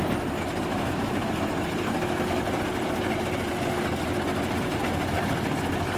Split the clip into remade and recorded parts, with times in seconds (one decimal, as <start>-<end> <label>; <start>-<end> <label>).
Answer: 0.0-0.7 recorded; 0.7-1.3 remade; 1.3-6.0 recorded